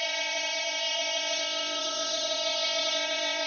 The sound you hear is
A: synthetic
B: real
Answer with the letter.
A